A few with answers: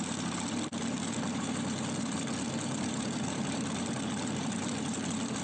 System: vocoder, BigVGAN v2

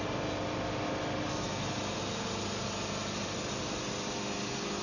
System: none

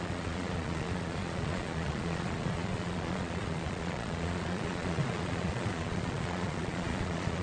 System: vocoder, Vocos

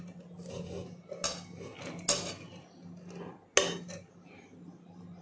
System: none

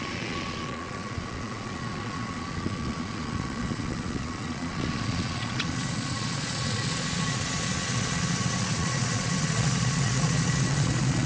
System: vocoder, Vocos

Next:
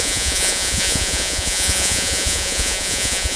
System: vocoder, Vocos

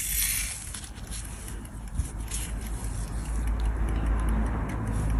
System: none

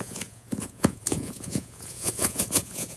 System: vocoder, Vocos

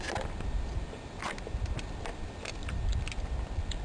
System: none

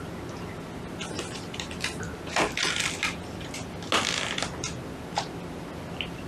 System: none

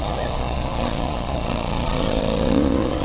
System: vocoder, Vocos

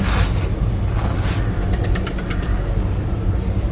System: none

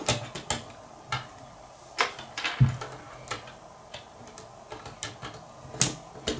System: none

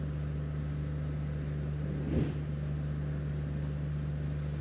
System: none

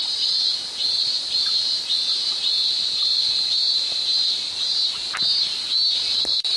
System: vocoder, BigVGAN v2